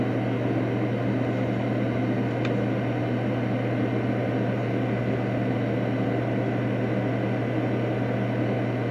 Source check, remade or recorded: recorded